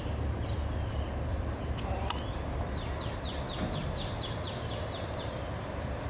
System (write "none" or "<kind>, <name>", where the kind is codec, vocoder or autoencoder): none